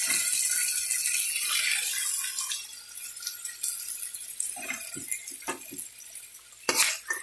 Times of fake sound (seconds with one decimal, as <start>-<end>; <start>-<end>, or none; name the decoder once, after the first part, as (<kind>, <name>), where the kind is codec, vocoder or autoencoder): none